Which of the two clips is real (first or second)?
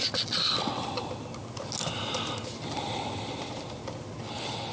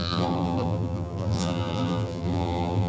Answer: first